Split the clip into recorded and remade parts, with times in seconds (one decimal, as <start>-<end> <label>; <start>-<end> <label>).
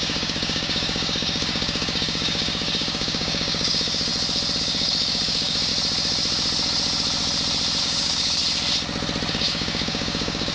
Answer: 0.0-4.1 remade; 4.1-4.6 recorded; 4.6-5.7 remade; 5.7-7.8 recorded; 7.8-8.4 remade; 8.4-9.3 recorded; 9.3-10.5 remade